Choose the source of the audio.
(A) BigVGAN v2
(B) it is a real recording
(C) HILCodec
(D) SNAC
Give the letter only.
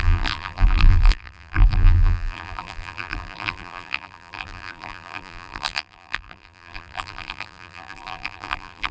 A